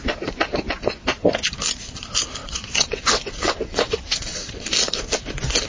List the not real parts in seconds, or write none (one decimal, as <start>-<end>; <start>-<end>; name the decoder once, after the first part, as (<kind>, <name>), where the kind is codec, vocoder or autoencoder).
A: 2.4-4.6 (vocoder, WaveNeXt)

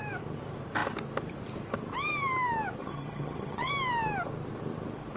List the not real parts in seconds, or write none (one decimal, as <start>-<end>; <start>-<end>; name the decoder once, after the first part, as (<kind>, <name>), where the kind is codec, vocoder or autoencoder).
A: 2.8-3.7 (vocoder, HiFi-GAN)

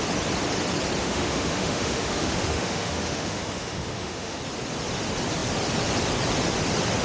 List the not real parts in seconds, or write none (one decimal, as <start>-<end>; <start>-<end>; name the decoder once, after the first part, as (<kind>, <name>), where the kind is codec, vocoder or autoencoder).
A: 1.0-4.4 (autoencoder, DAC-VAE)